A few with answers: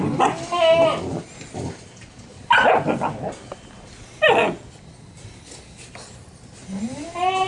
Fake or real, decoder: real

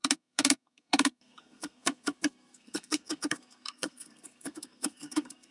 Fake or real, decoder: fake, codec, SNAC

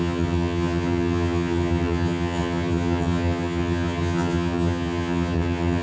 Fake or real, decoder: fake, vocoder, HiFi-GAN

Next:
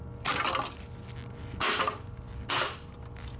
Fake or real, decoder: real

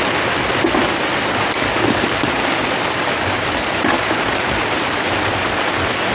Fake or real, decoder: real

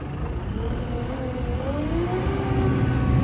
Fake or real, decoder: real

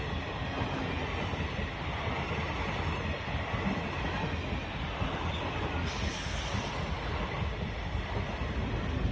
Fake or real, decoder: real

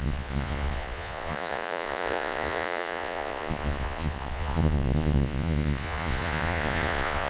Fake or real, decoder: fake, vocoder, Vocos